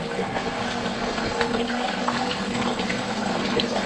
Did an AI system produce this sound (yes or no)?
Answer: yes